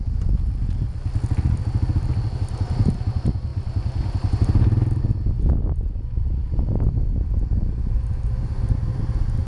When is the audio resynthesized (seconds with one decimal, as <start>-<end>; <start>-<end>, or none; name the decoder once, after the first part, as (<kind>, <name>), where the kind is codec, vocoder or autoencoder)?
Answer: none